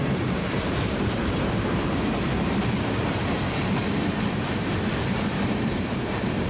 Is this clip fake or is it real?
fake